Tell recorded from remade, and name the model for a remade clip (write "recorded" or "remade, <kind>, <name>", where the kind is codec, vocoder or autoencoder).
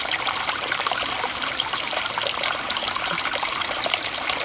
remade, vocoder, BigVGAN v2